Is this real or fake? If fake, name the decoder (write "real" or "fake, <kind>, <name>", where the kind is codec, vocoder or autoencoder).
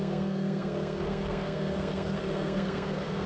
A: fake, codec, SNAC